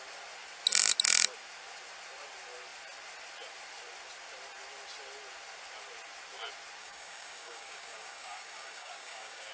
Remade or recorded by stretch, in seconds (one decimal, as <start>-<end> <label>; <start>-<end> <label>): 0.0-6.8 recorded; 6.8-9.5 remade